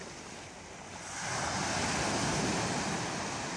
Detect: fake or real real